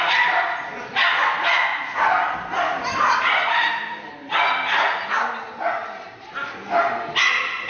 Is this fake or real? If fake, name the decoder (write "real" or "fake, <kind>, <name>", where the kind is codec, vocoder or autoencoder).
real